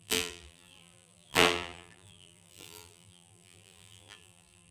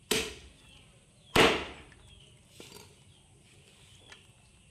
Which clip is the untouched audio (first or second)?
second